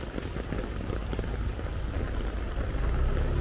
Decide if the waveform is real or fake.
real